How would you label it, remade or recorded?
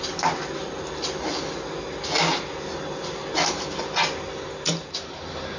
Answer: recorded